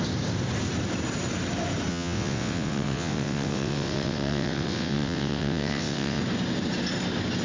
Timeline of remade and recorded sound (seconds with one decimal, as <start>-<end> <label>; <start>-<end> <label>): 0.0-1.9 recorded; 1.9-6.2 remade; 6.2-7.4 recorded